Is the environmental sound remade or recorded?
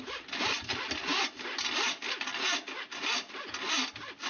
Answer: recorded